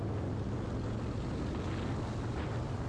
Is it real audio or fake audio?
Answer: real